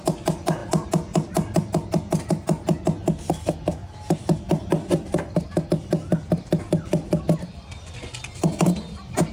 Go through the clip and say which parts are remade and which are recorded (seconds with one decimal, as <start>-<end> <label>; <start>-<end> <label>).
0.0-9.3 recorded